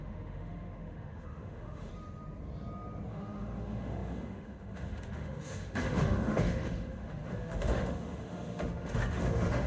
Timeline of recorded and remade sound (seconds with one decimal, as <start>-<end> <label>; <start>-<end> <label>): 0.0-1.9 remade; 1.9-3.1 recorded; 3.1-9.7 remade